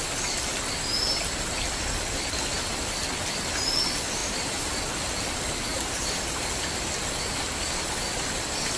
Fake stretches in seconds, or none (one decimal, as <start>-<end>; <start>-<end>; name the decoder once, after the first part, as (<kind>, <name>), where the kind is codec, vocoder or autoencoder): 4.2-4.8 (vocoder, BigVGAN v2); 5.7-6.4